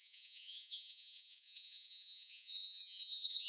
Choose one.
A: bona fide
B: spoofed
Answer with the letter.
B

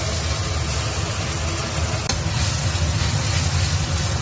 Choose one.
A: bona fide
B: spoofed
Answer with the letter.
A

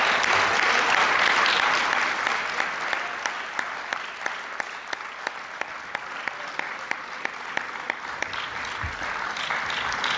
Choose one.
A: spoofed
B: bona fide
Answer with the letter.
B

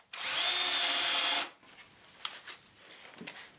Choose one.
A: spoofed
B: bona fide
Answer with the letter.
B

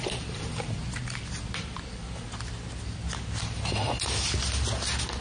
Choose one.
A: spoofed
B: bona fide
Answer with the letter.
B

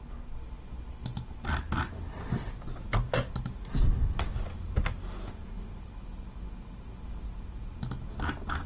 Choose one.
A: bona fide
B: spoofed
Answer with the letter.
A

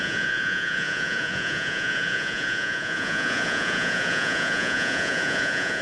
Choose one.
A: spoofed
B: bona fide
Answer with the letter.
A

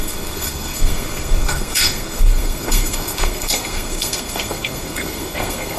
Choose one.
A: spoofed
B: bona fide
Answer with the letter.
A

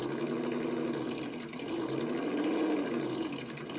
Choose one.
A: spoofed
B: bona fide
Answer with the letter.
B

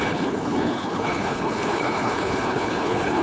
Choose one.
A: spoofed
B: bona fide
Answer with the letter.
A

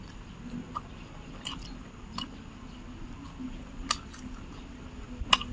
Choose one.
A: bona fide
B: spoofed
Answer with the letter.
A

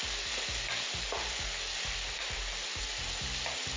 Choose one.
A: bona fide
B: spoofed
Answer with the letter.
B